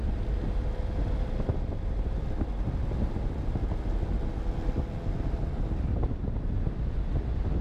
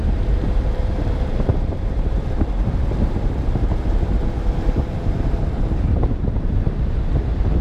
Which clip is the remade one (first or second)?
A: second